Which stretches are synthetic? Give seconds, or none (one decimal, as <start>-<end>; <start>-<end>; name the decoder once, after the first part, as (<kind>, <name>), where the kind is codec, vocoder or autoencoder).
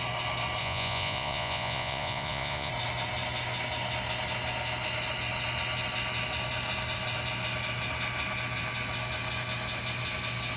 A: 0.6-2.7 (vocoder, Vocos)